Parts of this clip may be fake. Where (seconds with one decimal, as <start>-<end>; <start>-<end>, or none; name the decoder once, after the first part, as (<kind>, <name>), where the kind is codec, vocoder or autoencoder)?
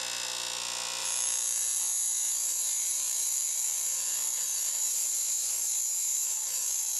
1.0-1.8 (vocoder, BigVGAN v2); 2.9-5.1; 6.1-7.0